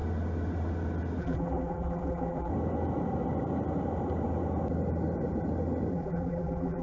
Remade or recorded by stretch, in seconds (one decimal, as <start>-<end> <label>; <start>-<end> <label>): 0.0-1.2 recorded; 1.2-2.5 remade; 2.5-5.9 recorded; 5.9-6.8 remade